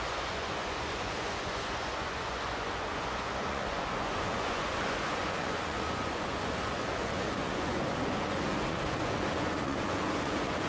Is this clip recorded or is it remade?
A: remade